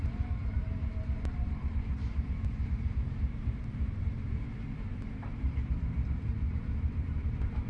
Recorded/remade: remade